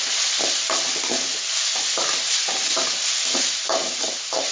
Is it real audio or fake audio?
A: real